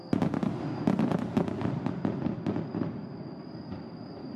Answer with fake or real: real